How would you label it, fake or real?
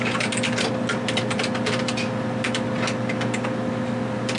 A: real